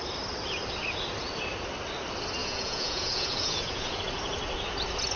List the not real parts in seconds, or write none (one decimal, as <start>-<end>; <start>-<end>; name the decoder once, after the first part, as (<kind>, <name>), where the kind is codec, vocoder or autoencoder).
2.4-4.0 (vocoder, Vocos)